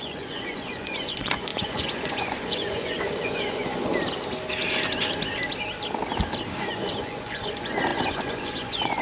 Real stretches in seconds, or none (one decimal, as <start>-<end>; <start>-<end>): 3.9-6.6

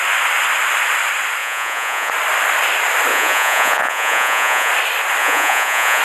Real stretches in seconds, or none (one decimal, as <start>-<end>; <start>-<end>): 0.0-1.4; 2.1-3.1; 4.7-5.2

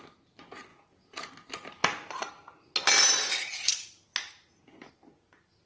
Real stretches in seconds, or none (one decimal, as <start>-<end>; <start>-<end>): 0.0-0.7; 1.3-5.7

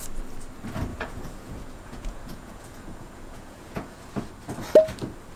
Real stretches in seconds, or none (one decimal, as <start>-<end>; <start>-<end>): 0.0-0.9; 4.1-5.4

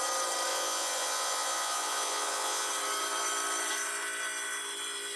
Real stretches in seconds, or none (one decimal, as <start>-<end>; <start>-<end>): 0.0-0.5; 2.7-5.2

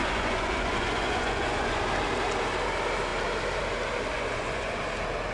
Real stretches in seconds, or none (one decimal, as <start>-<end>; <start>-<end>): 1.8-4.1; 4.8-5.3